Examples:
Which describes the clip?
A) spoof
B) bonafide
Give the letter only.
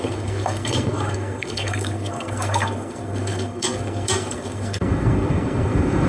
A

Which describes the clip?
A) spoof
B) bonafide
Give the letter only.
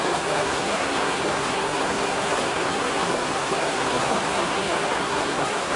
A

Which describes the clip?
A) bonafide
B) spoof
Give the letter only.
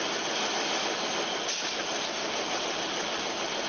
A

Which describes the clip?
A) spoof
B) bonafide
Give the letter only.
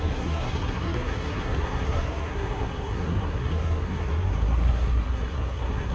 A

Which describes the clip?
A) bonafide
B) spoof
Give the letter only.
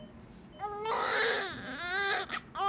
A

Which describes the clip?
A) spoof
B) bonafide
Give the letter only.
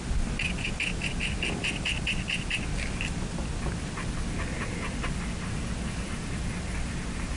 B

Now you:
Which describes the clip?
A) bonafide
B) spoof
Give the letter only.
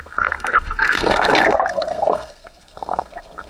B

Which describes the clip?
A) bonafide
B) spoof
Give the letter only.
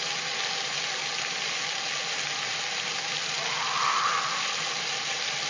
A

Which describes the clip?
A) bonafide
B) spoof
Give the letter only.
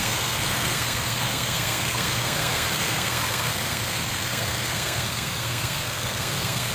B